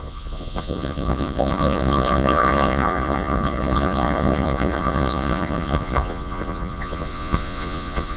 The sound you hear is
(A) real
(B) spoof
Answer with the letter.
B